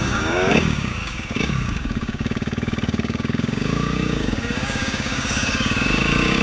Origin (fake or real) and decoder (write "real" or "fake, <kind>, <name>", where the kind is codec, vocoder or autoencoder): fake, codec, DAC